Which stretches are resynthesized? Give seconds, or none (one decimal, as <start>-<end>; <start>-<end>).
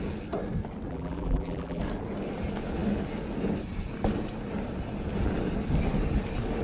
0.9-1.8